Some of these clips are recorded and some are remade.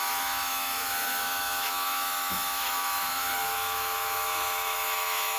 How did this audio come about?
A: remade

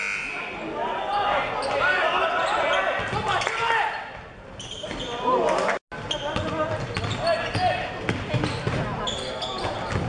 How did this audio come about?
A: recorded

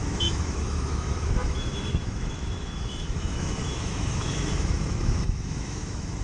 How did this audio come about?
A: remade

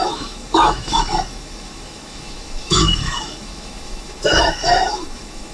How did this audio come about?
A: remade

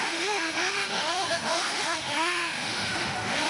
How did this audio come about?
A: remade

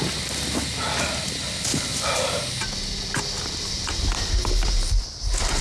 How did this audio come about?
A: recorded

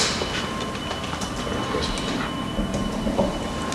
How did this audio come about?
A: recorded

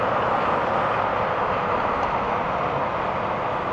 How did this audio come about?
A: recorded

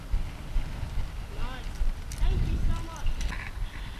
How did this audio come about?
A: recorded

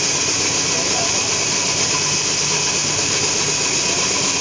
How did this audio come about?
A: recorded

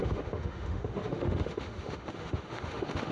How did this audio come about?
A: remade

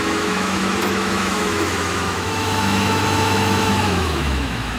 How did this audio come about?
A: remade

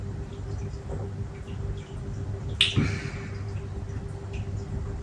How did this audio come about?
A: recorded